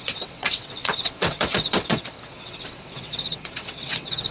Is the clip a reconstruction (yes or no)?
yes